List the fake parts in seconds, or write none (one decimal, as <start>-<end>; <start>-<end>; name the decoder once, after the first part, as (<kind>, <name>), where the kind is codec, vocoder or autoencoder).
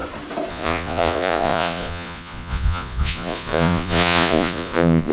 0.5-5.1 (vocoder, Vocos)